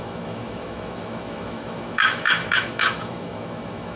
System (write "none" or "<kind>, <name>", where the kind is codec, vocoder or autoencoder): autoencoder, DAC-VAE